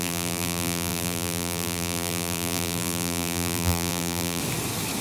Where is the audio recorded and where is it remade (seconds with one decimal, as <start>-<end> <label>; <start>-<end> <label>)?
0.0-4.4 remade; 4.4-5.0 recorded

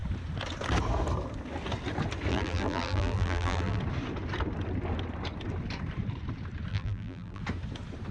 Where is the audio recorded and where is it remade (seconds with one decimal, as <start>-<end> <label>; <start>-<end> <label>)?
0.0-2.3 recorded; 2.3-3.8 remade; 3.8-6.7 recorded; 6.7-7.4 remade; 7.4-8.1 recorded

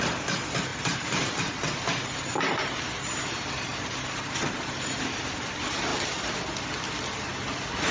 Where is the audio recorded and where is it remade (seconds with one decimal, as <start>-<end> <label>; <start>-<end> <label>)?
0.0-0.7 recorded; 0.7-3.1 remade; 3.1-3.7 recorded; 3.7-4.7 remade; 4.7-7.9 recorded

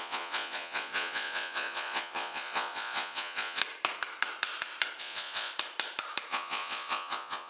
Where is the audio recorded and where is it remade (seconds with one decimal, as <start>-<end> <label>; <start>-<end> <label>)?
0.0-3.6 remade; 3.6-5.0 recorded; 5.0-5.5 remade; 5.5-6.3 recorded; 6.3-7.5 remade

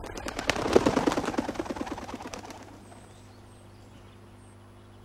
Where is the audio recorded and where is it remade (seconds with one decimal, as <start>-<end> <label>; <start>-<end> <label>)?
0.0-5.0 recorded

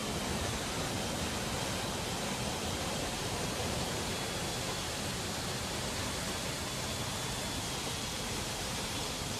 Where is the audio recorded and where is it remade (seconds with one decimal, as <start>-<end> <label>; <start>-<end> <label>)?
0.0-2.5 recorded; 2.5-3.6 remade; 3.6-8.1 recorded; 8.1-9.4 remade

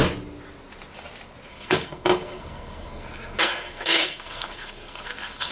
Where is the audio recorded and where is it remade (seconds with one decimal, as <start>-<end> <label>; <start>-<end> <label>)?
0.0-1.5 recorded; 1.5-5.5 remade